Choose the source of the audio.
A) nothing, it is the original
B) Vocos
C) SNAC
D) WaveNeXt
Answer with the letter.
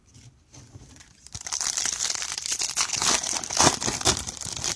A